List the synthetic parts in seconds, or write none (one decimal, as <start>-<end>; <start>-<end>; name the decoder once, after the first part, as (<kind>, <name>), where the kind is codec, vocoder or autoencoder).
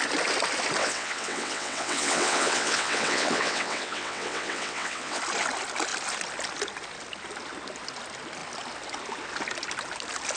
0.8-5.2 (vocoder, WaveNeXt)